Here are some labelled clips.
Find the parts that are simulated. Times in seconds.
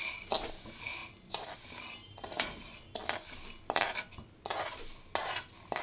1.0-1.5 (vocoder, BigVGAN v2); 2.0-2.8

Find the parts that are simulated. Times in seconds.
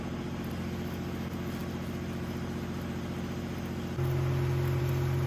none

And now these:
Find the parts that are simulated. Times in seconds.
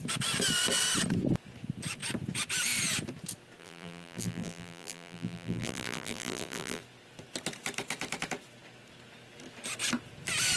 3.6-6.8 (vocoder, BigVGAN v2)